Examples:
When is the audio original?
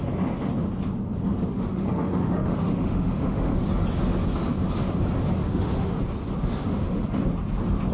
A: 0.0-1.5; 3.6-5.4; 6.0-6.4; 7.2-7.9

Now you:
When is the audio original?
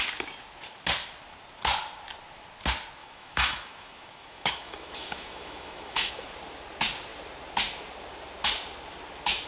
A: 0.0-3.0; 6.1-9.5